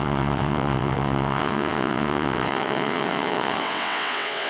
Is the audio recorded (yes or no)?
no